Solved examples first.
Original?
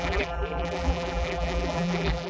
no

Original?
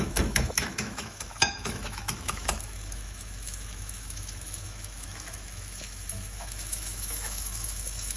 no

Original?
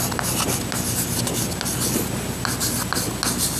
yes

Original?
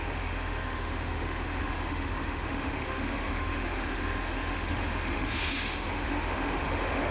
no